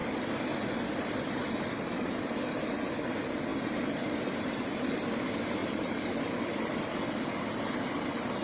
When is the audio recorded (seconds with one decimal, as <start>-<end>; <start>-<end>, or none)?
0.0-3.5; 4.9-5.6; 6.3-8.4